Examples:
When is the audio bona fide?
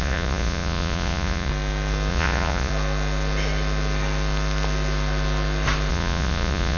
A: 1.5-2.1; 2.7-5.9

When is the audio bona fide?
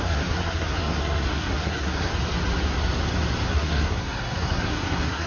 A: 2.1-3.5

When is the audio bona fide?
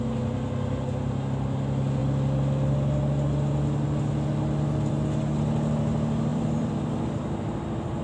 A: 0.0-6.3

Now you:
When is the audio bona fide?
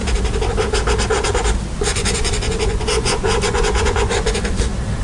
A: 0.0-1.9; 4.5-5.0